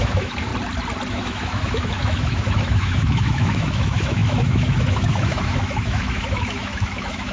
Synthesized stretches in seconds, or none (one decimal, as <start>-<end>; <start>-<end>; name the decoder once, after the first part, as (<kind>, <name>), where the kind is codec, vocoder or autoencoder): 0.0-0.5 (autoencoder, DAC-VAE); 1.1-7.3